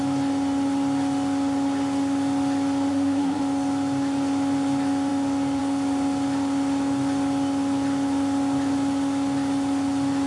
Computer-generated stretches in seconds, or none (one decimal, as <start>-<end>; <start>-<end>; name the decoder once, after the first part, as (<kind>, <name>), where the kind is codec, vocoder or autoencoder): 2.9-3.4 (codec, SNAC)